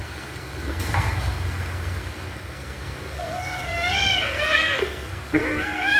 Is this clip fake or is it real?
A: fake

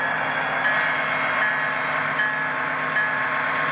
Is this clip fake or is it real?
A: real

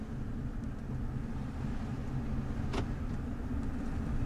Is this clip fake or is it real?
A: real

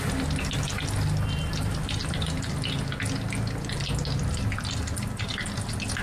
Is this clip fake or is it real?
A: real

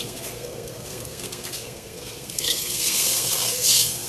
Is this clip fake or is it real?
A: fake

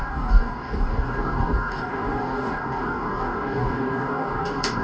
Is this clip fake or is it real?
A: fake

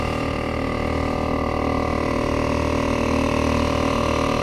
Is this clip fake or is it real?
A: real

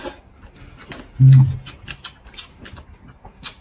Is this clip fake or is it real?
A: real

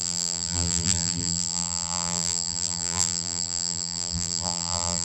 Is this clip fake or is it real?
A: fake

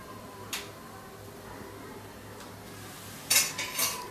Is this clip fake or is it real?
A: real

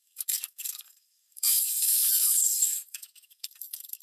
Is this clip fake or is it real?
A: fake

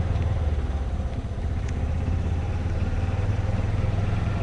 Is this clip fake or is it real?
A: fake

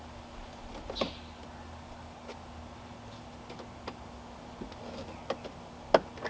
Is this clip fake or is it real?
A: real